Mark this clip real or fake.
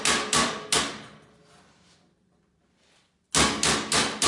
real